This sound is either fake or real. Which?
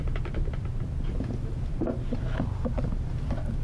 real